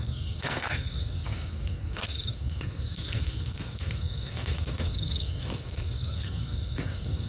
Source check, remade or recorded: remade